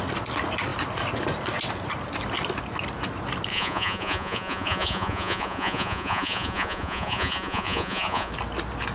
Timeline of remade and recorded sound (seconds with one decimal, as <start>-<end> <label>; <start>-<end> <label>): 0.0-3.5 recorded; 3.5-8.3 remade; 8.3-8.9 recorded